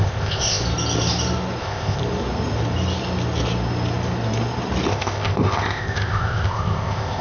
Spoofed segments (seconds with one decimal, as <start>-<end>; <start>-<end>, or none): 0.0-0.6; 1.6-2.0; 4.9-7.2